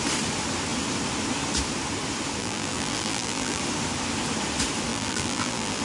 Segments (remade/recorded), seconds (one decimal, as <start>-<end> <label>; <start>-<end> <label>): 0.0-2.4 recorded; 2.4-3.6 remade; 3.6-4.9 recorded; 4.9-5.8 remade